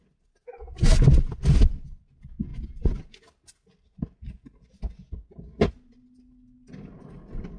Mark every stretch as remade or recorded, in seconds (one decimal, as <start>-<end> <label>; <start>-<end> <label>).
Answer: 0.0-7.6 recorded